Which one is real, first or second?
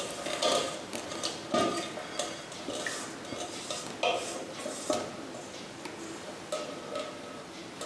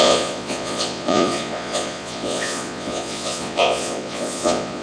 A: first